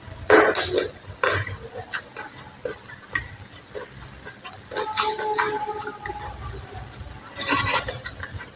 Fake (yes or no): no